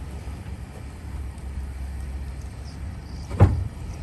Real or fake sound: fake